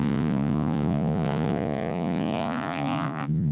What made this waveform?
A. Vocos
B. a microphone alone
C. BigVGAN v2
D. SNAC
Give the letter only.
A